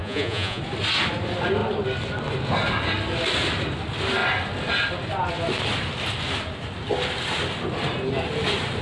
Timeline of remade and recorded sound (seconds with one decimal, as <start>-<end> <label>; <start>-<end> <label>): 0.0-0.6 remade; 0.6-8.8 recorded